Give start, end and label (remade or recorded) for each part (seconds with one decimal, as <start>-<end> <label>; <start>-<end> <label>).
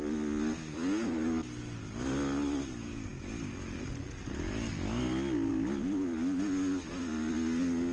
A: 0.0-7.9 recorded